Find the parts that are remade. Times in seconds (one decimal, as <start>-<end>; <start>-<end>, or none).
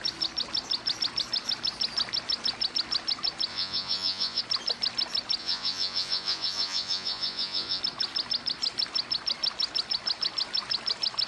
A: 3.5-4.4; 5.4-7.8